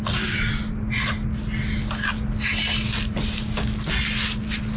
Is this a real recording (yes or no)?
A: yes